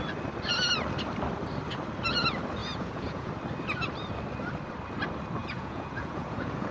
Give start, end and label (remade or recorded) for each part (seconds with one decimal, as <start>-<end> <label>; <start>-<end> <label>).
0.0-2.6 recorded; 2.6-3.3 remade; 3.3-5.4 recorded; 5.4-6.7 remade